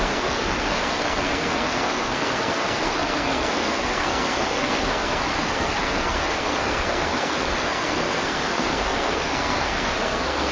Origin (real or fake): fake